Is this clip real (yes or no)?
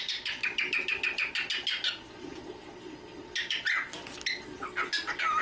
yes